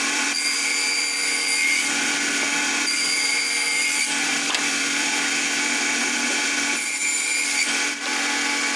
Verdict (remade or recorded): remade